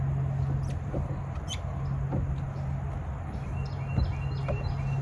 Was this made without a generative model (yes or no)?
yes